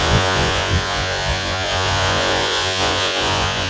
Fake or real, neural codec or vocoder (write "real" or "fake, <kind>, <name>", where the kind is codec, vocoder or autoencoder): fake, vocoder, Vocos